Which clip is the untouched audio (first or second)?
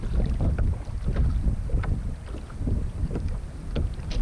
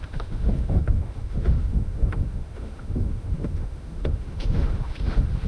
first